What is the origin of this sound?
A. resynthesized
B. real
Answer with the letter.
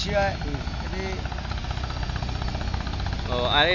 B